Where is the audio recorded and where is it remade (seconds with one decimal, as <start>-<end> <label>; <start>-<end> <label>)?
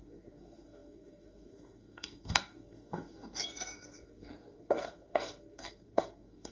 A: 0.0-6.5 remade